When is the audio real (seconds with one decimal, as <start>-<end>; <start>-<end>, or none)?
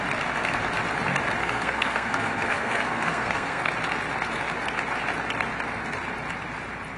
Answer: 0.0-1.4; 3.7-7.0